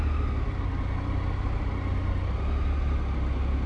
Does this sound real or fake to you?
real